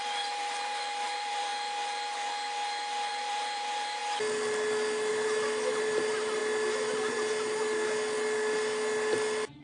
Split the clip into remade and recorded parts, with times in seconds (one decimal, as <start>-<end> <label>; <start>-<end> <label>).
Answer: 0.0-1.5 remade; 1.5-3.1 recorded; 3.1-4.0 remade; 4.0-5.1 recorded; 5.1-6.4 remade; 6.4-9.6 recorded